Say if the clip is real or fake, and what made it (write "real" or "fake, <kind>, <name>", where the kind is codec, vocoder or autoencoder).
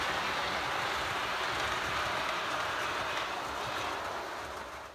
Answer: real